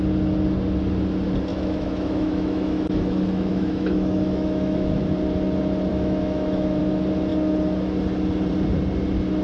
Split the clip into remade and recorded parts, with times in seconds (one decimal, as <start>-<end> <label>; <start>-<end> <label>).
0.0-1.5 recorded; 1.5-5.0 remade; 5.0-5.9 recorded; 5.9-6.8 remade; 6.8-9.4 recorded